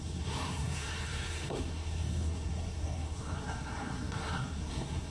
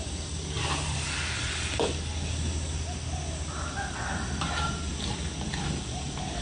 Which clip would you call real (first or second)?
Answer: second